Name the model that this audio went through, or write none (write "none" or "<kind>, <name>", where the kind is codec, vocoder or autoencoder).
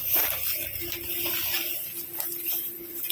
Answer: none